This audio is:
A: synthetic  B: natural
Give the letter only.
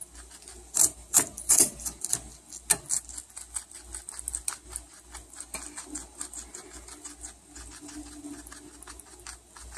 B